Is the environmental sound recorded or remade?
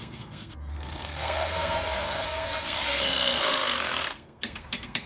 remade